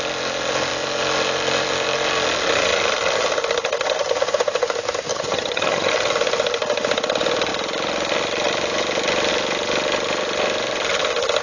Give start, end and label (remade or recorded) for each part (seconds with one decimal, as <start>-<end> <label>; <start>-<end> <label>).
0.0-5.1 recorded; 5.1-5.9 remade; 5.9-11.4 recorded